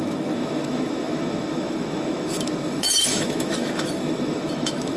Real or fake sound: fake